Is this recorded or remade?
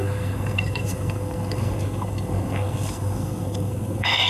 remade